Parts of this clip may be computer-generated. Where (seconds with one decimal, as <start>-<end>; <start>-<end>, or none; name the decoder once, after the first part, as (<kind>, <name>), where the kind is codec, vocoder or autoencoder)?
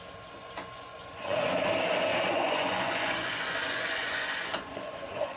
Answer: 0.4-1.6 (vocoder, Vocos); 2.1-5.4